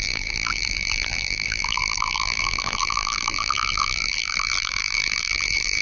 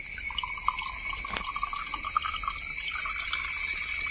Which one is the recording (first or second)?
second